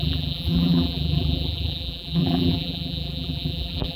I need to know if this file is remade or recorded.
remade